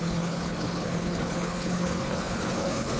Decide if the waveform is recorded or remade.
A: remade